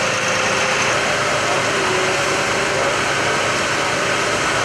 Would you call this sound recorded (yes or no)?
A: yes